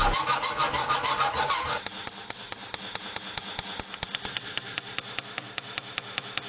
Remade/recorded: recorded